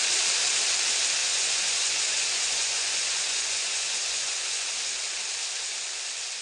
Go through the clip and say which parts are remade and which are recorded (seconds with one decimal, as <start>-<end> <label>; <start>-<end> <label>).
0.0-1.2 recorded; 1.2-4.7 remade; 4.7-6.4 recorded